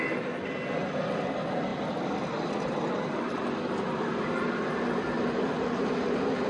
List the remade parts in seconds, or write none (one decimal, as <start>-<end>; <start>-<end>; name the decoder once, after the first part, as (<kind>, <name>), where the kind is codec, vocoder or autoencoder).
1.7-4.5 (vocoder, BigVGAN v2)